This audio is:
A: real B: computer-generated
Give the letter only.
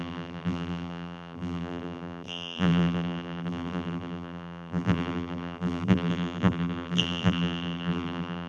B